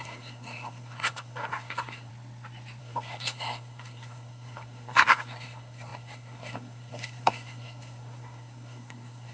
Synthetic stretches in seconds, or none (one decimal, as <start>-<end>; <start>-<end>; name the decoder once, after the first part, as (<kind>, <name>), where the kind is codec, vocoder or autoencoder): 0.0-2.1 (codec, SNAC); 2.8-9.3